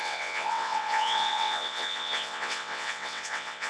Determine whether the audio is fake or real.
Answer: fake